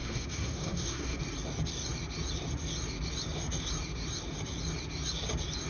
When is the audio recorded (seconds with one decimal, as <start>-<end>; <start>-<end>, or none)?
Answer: 1.2-5.7

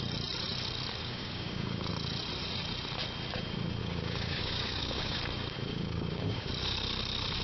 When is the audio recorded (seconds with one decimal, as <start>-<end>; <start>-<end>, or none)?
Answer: 0.0-1.0; 1.9-3.8; 5.2-5.7; 6.5-7.4

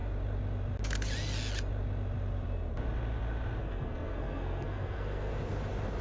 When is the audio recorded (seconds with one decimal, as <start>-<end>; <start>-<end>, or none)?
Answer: 0.0-3.6; 5.3-6.0

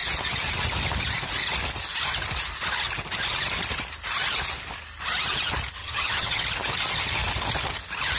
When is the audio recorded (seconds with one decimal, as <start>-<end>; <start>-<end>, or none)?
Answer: 0.0-5.8; 6.4-8.2

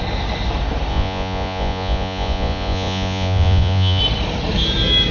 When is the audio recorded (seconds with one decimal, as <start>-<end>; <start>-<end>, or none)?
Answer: 0.0-0.9; 4.0-5.1